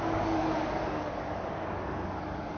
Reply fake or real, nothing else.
fake